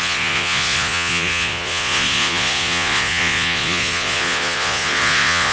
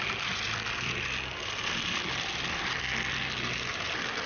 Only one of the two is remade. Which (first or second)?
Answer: first